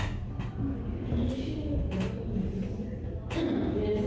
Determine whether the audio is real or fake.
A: real